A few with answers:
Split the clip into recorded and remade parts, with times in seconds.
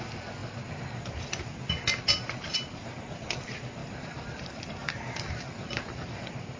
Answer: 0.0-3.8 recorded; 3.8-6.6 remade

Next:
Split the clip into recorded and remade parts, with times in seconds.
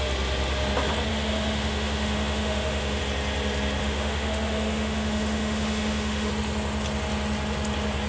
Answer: 0.0-1.1 recorded; 1.1-3.0 remade; 3.0-3.8 recorded; 3.8-6.3 remade; 6.3-8.1 recorded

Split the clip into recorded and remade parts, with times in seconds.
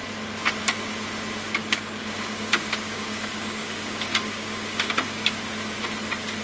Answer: 0.0-1.6 recorded; 1.6-5.4 remade; 5.4-6.4 recorded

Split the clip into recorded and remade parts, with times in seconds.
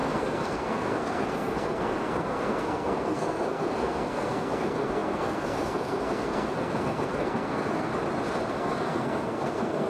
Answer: 0.0-7.9 remade; 7.9-8.5 recorded; 8.5-9.9 remade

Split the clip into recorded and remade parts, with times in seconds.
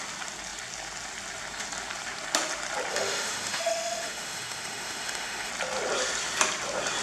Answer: 0.0-2.9 recorded; 2.9-5.5 remade; 5.5-7.0 recorded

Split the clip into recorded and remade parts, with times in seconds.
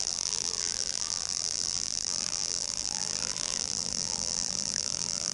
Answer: 0.0-5.3 remade